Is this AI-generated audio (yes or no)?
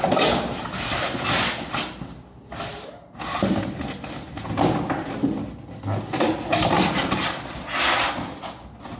no